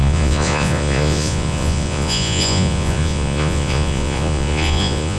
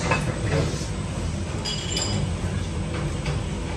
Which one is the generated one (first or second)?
first